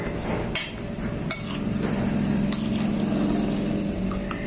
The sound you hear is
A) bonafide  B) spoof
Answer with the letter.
A